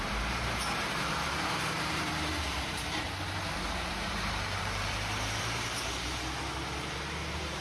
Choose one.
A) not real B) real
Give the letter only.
A